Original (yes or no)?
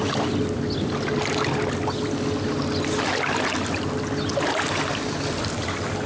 yes